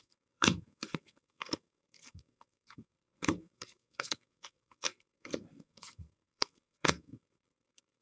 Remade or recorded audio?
remade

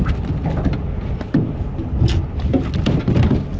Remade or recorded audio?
recorded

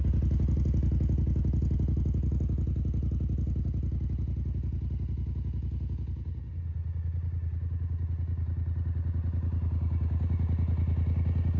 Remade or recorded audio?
recorded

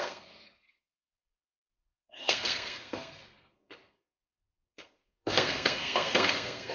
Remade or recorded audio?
remade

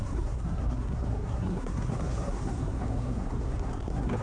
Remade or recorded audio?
remade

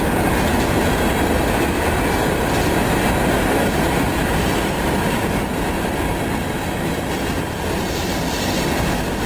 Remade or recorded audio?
recorded